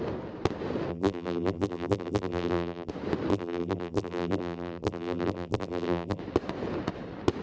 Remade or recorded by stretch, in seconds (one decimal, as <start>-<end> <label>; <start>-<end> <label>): 0.0-0.9 recorded; 0.9-2.9 remade; 2.9-3.3 recorded; 3.3-6.2 remade; 6.2-7.4 recorded